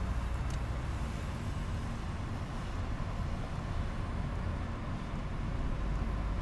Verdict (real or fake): real